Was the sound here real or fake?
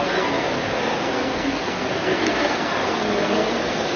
fake